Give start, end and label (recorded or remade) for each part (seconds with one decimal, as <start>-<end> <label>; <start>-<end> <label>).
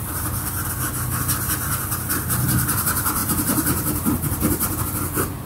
0.0-3.2 recorded; 3.2-4.8 remade; 4.8-5.5 recorded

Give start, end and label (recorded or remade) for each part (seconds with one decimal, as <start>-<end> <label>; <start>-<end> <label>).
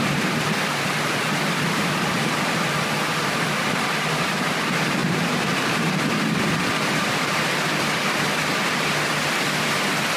0.0-10.2 remade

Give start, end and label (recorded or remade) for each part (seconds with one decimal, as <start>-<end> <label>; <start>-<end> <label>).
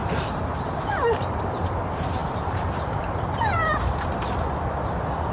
0.0-3.6 remade; 3.6-5.3 recorded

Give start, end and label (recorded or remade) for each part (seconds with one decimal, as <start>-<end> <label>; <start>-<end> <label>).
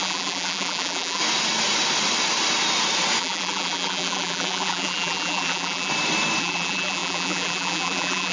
0.0-1.2 remade; 1.2-3.2 recorded; 3.2-5.9 remade; 5.9-6.4 recorded; 6.4-8.3 remade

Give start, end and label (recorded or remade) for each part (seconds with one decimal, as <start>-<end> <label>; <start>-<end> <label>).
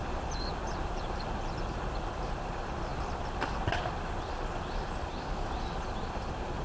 0.0-6.6 recorded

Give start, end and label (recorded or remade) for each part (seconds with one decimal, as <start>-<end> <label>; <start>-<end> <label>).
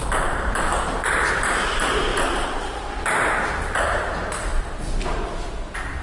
0.0-4.5 remade; 4.5-6.0 recorded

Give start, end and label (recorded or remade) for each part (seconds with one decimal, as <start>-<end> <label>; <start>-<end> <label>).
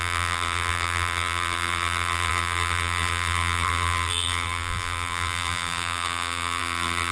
0.0-7.1 remade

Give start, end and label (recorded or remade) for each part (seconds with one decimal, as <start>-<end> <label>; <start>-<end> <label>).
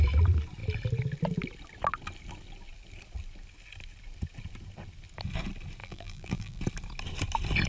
0.0-5.8 recorded; 5.8-6.6 remade; 6.6-7.7 recorded